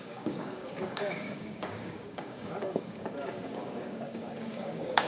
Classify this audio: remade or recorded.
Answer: remade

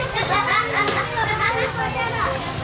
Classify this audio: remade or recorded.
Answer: recorded